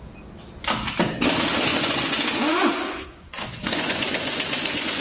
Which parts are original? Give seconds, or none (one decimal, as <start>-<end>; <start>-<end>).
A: 0.0-1.7